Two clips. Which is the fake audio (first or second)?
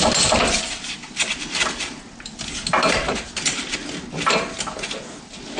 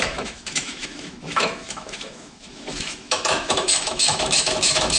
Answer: second